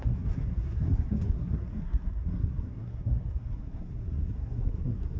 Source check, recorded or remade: remade